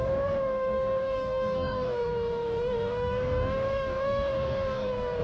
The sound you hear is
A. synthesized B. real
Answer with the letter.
A